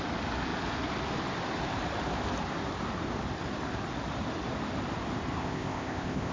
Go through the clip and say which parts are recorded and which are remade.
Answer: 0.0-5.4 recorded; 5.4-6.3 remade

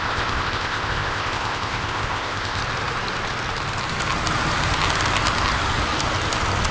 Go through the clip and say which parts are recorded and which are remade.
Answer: 0.0-2.6 remade; 2.6-6.7 recorded

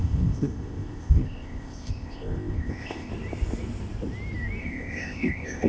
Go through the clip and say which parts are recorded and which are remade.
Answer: 0.0-3.1 remade; 3.1-4.6 recorded; 4.6-5.7 remade

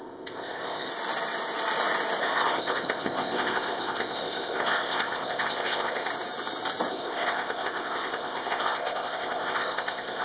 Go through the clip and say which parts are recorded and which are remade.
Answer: 0.0-0.9 remade; 0.9-2.2 recorded; 2.2-6.1 remade; 6.1-6.9 recorded; 6.9-10.2 remade

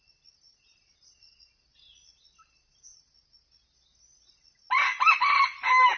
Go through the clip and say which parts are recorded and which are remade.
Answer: 0.0-6.0 recorded

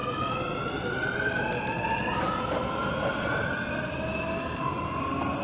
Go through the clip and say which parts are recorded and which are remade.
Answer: 0.0-5.4 recorded

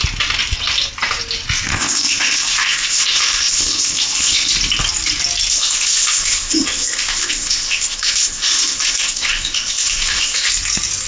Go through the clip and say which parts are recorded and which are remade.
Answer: 0.0-1.7 recorded; 1.7-4.5 remade; 4.5-5.5 recorded; 5.5-10.5 remade; 10.5-11.1 recorded